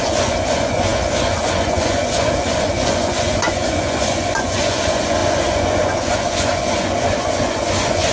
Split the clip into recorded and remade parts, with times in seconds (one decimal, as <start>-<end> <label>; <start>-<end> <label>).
0.0-8.1 remade

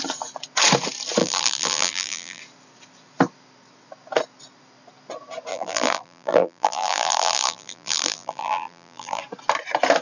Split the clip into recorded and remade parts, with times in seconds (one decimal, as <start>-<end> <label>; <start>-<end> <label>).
0.0-1.2 recorded; 1.2-2.4 remade; 2.4-5.5 recorded; 5.5-9.2 remade; 9.2-10.0 recorded